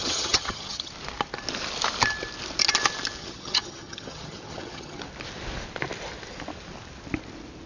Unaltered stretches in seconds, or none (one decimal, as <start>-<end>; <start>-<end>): 0.9-3.2; 5.0-7.7